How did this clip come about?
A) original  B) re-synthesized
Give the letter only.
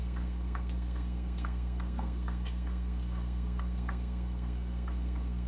B